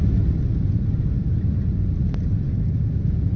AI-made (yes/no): no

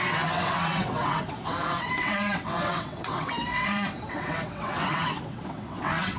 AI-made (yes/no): yes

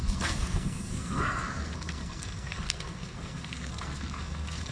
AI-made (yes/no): yes